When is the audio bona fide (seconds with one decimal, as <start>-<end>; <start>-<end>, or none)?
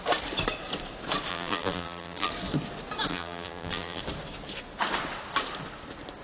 0.0-1.3; 2.3-3.1; 4.0-6.2